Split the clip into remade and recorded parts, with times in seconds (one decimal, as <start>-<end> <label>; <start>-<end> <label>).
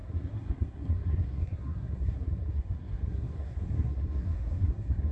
0.0-5.1 remade